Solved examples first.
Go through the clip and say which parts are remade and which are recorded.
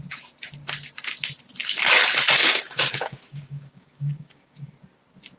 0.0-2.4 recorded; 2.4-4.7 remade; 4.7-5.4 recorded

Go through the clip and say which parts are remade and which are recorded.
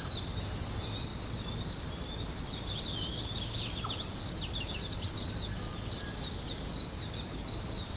0.0-8.0 recorded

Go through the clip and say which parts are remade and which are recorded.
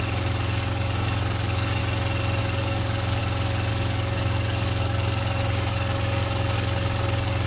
0.0-1.8 remade; 1.8-2.4 recorded; 2.4-3.2 remade; 3.2-3.7 recorded; 3.7-7.5 remade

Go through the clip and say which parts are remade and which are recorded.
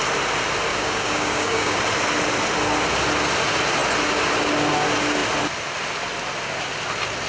0.0-0.7 recorded; 0.7-1.8 remade; 1.8-7.3 recorded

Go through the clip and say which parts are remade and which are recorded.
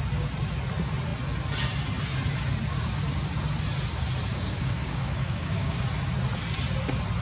0.0-4.3 recorded; 4.3-5.8 remade; 5.8-7.2 recorded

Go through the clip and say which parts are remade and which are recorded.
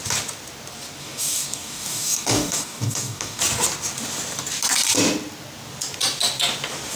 0.0-1.0 recorded; 1.0-3.4 remade; 3.4-7.0 recorded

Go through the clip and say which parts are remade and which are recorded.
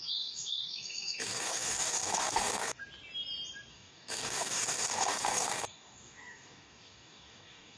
0.0-2.8 remade; 2.8-3.7 recorded; 3.7-7.8 remade